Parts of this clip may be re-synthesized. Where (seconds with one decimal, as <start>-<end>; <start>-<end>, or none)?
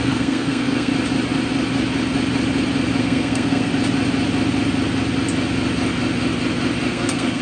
0.0-0.9; 3.0-3.7; 6.9-7.4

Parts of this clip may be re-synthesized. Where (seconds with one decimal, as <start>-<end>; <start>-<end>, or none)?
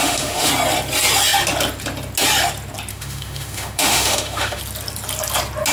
0.0-0.5; 2.9-4.6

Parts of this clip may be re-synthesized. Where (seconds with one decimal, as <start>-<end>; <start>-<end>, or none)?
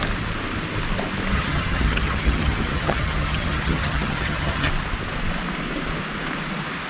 1.3-4.7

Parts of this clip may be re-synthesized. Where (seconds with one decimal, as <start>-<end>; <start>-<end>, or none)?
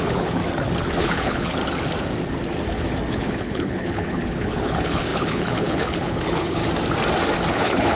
0.0-0.4; 1.0-1.6; 3.1-6.6; 7.5-8.0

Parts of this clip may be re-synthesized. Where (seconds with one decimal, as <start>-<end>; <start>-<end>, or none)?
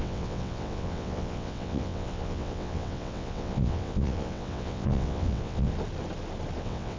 0.0-5.7; 6.6-7.0